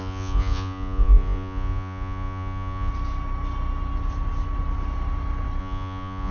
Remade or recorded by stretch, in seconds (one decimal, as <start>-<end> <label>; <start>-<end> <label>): 0.0-2.9 remade; 2.9-5.6 recorded; 5.6-6.3 remade